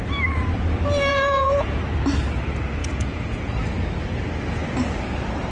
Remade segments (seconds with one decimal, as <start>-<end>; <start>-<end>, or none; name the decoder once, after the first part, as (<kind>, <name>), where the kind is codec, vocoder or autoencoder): 1.1-1.8 (vocoder, Vocos); 2.8-3.4